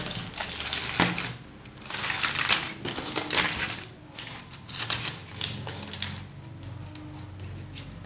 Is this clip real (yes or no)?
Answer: yes